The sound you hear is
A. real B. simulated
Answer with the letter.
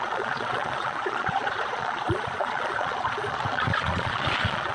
B